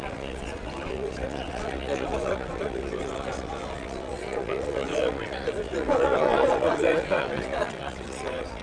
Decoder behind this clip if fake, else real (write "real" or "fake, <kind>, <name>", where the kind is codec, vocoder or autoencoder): fake, vocoder, WaveNeXt